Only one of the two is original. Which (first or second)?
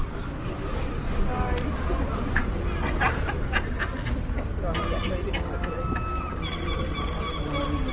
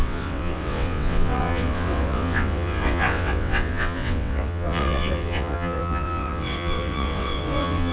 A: first